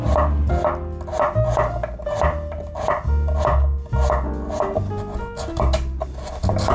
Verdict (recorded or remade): recorded